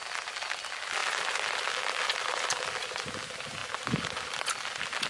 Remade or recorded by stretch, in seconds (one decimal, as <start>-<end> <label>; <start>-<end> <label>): 0.0-5.1 recorded